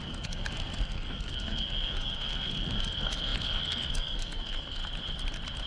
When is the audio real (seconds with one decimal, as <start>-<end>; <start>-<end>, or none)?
4.8-5.7